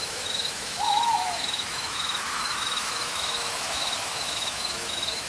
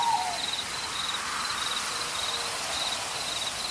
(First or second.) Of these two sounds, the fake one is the first